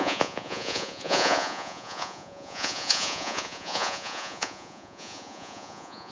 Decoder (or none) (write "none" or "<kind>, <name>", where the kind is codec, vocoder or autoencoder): vocoder, Vocos